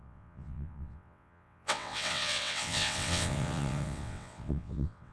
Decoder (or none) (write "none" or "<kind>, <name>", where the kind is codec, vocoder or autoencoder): vocoder, WaveNeXt